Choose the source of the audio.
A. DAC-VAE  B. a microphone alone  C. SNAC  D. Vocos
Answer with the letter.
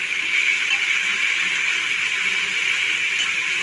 B